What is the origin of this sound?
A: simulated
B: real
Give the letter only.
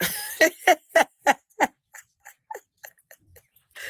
A